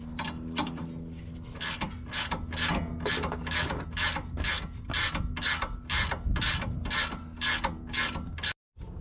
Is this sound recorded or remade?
recorded